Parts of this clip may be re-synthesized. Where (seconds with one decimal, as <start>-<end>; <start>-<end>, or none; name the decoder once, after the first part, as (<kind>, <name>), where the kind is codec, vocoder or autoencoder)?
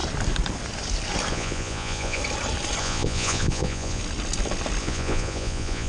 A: 1.3-2.2 (vocoder, Vocos); 2.8-4.0; 4.8-5.9